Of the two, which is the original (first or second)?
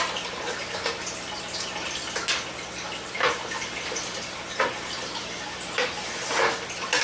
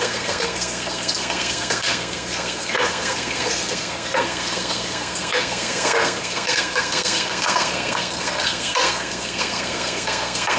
first